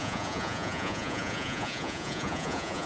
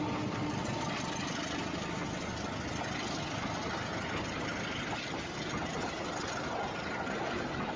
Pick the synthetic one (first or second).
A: first